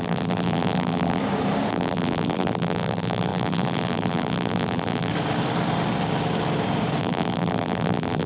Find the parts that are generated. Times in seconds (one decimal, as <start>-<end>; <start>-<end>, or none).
0.0-1.2; 1.7-5.1; 7.0-8.3